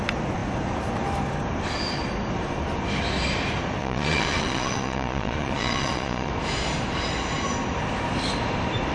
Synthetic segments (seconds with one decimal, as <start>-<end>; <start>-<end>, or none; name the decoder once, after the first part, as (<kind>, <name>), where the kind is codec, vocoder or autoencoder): 3.8-6.3 (vocoder, Vocos)